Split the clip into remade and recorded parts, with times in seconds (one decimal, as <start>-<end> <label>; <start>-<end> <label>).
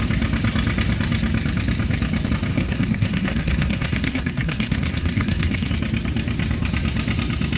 0.0-2.5 recorded; 2.5-5.7 remade; 5.7-7.6 recorded